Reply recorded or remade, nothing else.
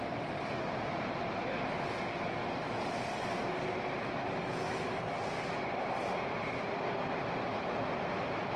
recorded